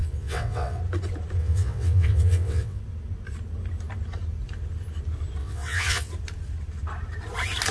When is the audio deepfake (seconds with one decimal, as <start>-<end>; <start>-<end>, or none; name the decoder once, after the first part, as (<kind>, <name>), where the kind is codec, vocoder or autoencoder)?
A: 0.0-0.8 (vocoder, WaveNeXt); 1.4-2.8; 5.4-6.1

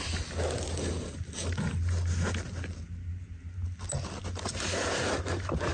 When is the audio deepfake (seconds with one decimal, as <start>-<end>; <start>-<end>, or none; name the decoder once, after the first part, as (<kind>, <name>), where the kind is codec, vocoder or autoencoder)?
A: none

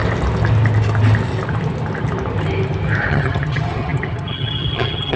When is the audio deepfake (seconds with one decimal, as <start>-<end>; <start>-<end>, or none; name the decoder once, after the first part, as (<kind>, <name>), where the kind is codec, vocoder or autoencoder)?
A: 3.1-5.2 (vocoder, HiFi-GAN)

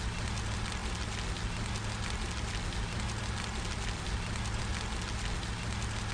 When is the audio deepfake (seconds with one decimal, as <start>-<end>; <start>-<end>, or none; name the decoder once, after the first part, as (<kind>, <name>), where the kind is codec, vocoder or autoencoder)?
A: 0.0-0.8 (vocoder, BigVGAN v2); 3.0-4.7

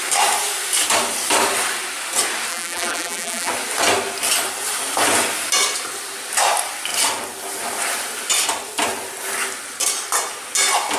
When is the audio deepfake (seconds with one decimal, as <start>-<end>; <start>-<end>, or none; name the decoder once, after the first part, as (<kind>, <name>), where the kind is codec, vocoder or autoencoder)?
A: 2.5-3.5 (vocoder, BigVGAN v2)

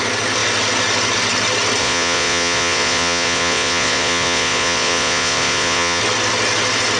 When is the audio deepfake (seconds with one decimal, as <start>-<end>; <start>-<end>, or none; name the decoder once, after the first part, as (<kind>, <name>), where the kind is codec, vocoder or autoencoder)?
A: 1.8-6.0 (vocoder, Vocos)

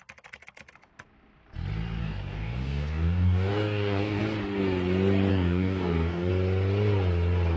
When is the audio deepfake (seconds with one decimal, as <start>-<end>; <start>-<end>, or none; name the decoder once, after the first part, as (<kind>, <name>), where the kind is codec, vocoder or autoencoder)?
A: 2.0-4.2 (codec, DAC); 5.3-6.3

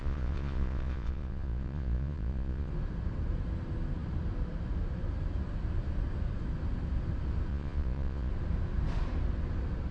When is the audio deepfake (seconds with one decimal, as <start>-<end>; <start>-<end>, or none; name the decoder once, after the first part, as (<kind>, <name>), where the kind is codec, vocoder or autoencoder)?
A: 0.0-2.7 (vocoder, Vocos); 7.5-8.3